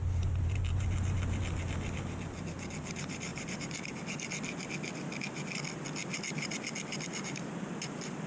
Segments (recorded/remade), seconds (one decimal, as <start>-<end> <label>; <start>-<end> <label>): 0.0-3.3 recorded; 3.3-3.8 remade; 3.8-8.3 recorded